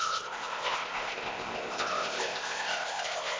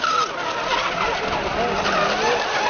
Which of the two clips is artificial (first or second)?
first